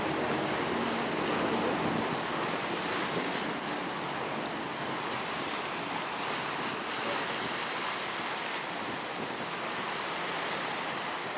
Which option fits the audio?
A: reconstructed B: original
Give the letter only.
B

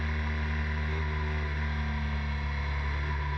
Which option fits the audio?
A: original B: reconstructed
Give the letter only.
A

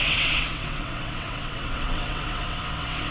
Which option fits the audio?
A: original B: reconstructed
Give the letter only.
B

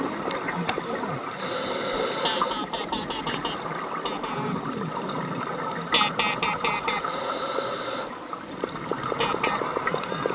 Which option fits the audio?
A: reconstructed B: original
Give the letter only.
B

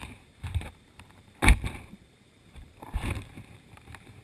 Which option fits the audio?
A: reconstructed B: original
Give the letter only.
A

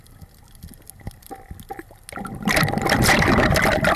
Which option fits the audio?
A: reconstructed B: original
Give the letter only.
B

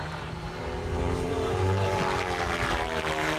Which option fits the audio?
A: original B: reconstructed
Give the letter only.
B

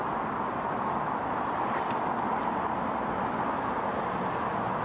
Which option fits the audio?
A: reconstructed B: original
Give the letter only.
B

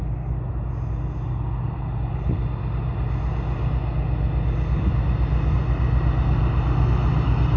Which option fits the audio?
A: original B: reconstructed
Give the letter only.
A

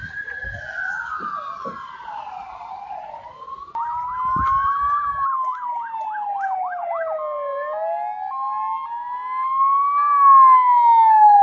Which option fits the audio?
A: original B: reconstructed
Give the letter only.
A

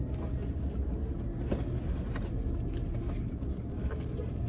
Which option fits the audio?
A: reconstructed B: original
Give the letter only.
B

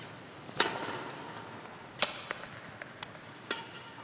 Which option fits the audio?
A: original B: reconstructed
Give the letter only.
A